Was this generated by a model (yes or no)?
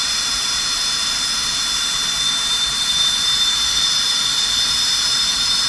yes